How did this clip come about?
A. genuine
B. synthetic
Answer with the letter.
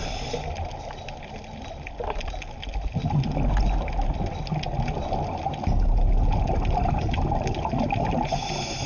A